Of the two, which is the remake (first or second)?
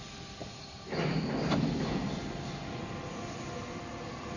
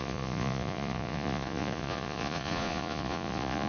second